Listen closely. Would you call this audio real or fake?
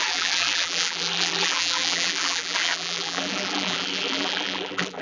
fake